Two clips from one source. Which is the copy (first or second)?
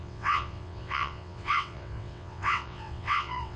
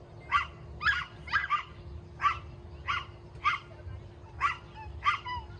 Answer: first